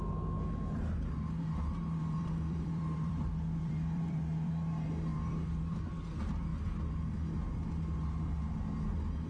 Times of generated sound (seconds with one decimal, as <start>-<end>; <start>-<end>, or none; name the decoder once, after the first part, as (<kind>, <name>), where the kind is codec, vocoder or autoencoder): 2.0-4.5 (vocoder, BigVGAN v2); 5.1-5.9